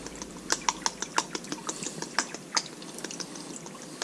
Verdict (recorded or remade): recorded